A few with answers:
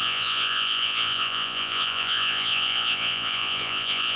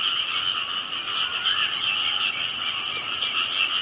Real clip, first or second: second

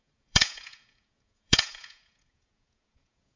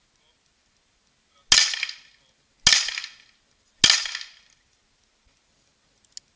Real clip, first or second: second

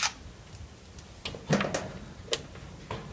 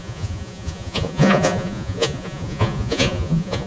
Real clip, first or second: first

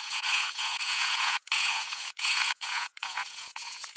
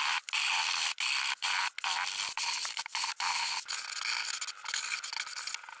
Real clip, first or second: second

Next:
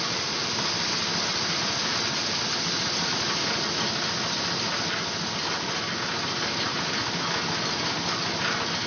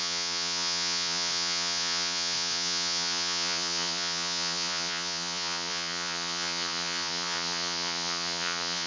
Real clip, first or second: first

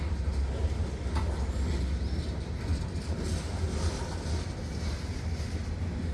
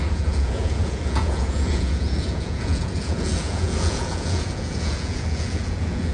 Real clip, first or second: first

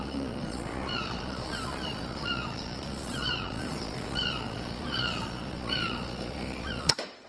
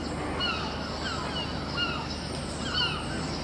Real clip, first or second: second